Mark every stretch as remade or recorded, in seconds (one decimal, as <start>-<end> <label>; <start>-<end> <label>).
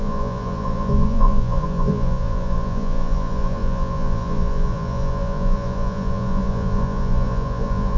0.0-8.0 remade